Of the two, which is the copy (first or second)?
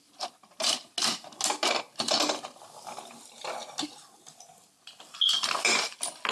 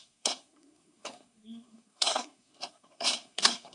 second